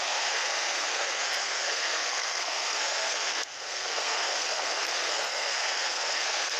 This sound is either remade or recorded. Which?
remade